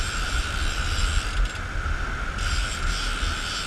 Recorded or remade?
recorded